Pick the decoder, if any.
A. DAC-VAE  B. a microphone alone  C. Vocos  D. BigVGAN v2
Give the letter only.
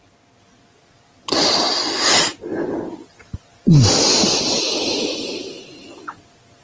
B